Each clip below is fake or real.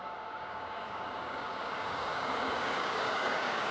fake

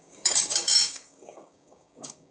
fake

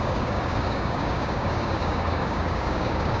fake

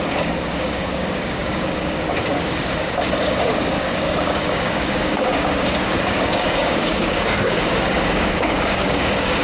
fake